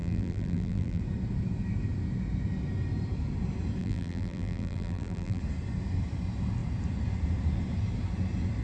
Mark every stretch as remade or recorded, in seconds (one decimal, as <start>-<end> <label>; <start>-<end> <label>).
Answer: 0.0-1.0 remade; 1.0-3.8 recorded; 3.8-5.4 remade; 5.4-8.6 recorded